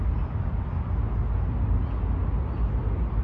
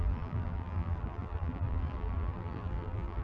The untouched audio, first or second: first